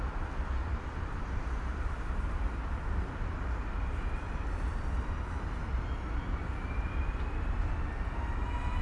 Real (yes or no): yes